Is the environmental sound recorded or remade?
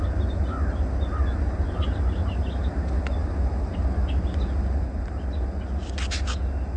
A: recorded